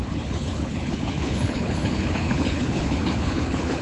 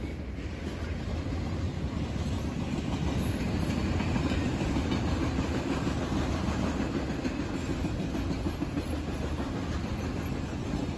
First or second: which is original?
second